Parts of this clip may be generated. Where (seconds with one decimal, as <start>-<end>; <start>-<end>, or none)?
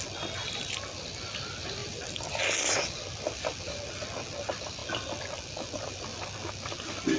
1.8-4.3; 4.8-6.0